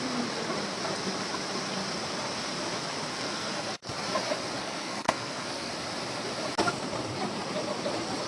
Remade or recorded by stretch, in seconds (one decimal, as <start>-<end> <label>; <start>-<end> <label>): 0.0-3.1 recorded; 3.1-3.9 remade; 3.9-4.6 recorded; 4.6-5.7 remade; 5.7-8.3 recorded